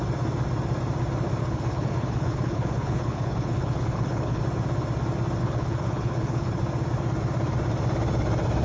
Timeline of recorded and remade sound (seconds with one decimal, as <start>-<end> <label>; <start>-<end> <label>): 0.0-1.4 recorded; 1.4-4.4 remade; 4.4-5.4 recorded; 5.4-6.6 remade; 6.6-8.6 recorded